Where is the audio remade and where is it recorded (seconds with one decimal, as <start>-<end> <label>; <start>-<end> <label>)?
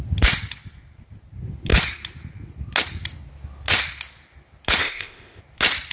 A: 0.0-4.8 recorded; 4.8-5.4 remade; 5.4-5.9 recorded